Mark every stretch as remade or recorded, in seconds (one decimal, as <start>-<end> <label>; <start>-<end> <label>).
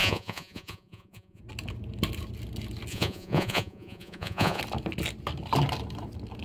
0.0-1.4 remade; 1.4-2.9 recorded; 2.9-4.6 remade; 4.6-6.4 recorded